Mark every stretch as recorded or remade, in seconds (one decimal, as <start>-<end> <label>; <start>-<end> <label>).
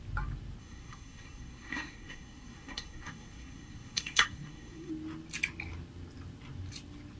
0.0-0.6 recorded; 0.6-4.9 remade; 4.9-7.2 recorded